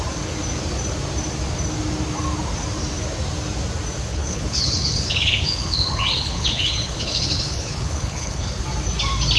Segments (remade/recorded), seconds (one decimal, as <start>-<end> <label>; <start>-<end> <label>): 0.0-4.1 recorded; 4.1-8.6 remade; 8.6-9.4 recorded